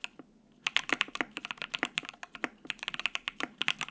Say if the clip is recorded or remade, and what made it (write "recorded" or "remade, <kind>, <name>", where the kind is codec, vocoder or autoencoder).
recorded